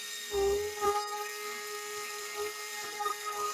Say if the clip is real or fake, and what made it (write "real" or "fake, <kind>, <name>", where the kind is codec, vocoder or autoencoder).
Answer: fake, codec, SNAC